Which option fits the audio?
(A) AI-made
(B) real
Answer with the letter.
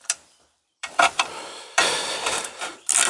A